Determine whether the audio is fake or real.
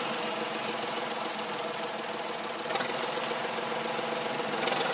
real